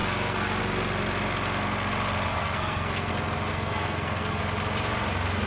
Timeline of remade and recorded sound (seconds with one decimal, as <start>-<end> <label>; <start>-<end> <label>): 0.0-0.6 remade; 0.6-2.3 recorded; 2.3-3.1 remade; 3.1-3.5 recorded; 3.5-4.4 remade; 4.4-5.5 recorded